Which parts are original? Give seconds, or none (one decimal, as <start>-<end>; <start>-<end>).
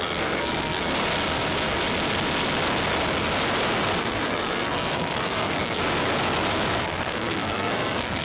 0.9-4.0; 5.8-6.8